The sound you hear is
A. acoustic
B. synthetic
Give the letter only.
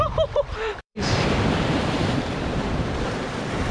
B